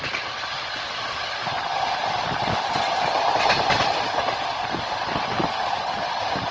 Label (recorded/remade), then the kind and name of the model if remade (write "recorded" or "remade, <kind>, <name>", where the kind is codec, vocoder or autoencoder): recorded